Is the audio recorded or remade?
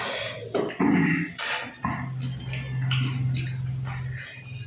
recorded